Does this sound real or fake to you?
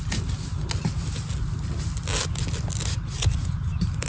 real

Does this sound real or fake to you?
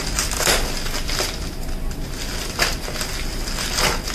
real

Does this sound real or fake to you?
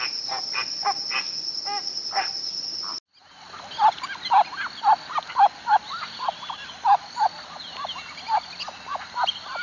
real